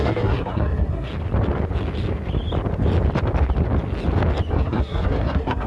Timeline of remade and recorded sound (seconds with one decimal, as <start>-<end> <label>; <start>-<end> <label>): 0.0-1.1 remade; 1.1-4.5 recorded; 4.5-5.7 remade